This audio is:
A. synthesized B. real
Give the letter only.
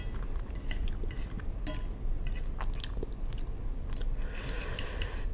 B